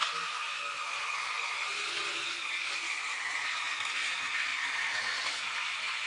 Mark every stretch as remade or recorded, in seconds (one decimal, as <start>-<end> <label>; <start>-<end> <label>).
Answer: 0.0-6.1 recorded